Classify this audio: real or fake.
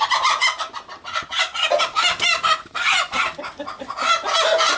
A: real